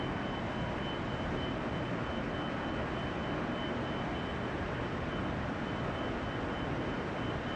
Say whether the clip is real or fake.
real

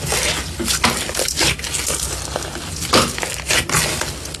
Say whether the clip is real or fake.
real